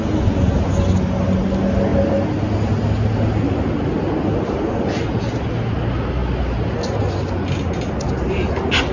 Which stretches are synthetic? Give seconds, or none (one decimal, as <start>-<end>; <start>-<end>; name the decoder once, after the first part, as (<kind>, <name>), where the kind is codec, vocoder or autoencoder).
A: none